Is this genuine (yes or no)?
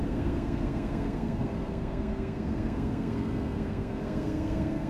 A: no